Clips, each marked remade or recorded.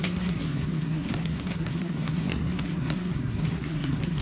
remade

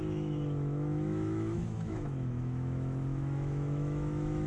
remade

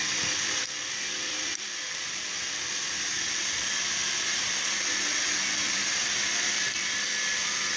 remade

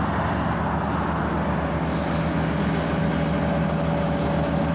recorded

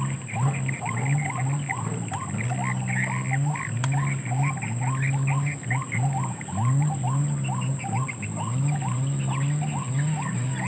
recorded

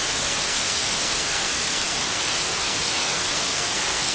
remade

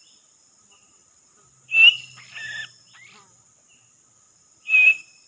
remade